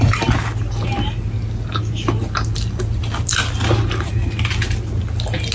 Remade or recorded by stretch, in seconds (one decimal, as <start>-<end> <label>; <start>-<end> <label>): 0.0-5.5 recorded